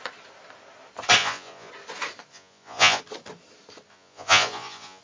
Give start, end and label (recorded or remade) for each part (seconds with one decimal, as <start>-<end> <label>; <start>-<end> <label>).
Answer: 0.0-1.2 recorded; 1.2-1.7 remade; 1.7-2.3 recorded; 2.3-3.0 remade; 3.0-3.9 recorded; 3.9-5.0 remade